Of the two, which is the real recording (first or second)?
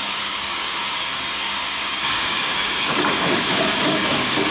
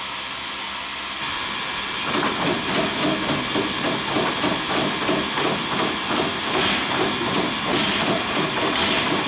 second